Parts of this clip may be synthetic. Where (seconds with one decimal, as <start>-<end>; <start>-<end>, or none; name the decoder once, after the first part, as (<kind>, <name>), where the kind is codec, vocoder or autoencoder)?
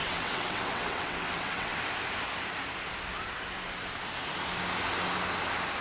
0.0-1.8 (vocoder, WaveNeXt)